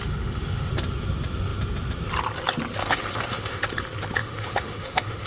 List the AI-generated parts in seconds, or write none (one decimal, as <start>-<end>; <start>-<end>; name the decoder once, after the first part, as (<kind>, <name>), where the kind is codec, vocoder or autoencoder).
0.0-0.7 (autoencoder, DAC-VAE); 2.8-3.6; 4.2-5.3